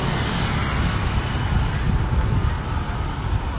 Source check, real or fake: real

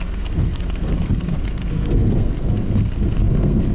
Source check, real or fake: fake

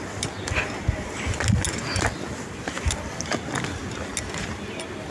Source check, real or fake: real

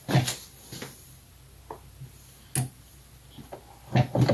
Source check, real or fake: real